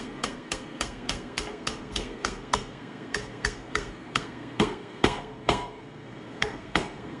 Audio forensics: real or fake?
fake